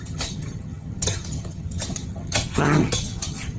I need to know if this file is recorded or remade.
remade